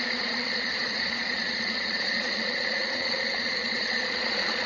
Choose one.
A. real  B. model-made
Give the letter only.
B